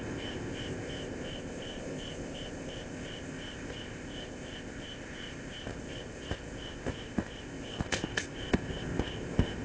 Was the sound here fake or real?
fake